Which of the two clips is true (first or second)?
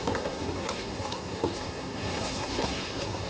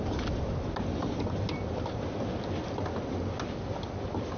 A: second